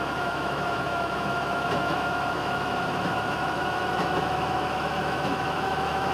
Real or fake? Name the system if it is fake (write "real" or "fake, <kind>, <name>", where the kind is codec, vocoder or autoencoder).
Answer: fake, autoencoder, DAC-VAE